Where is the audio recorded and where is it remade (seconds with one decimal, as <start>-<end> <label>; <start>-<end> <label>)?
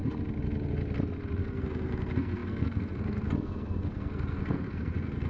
0.0-1.4 recorded; 1.4-5.3 remade